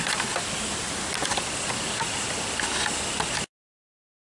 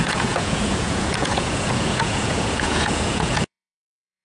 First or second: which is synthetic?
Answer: second